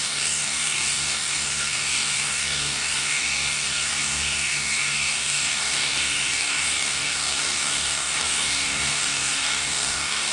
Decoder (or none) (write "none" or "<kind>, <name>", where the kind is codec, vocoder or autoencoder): codec, DAC